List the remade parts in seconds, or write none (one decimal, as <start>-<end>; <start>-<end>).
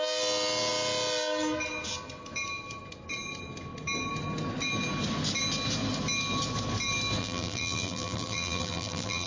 7.2-9.3